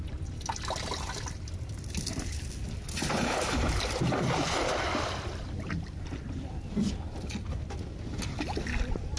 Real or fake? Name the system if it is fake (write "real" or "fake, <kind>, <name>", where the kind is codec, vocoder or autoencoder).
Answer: real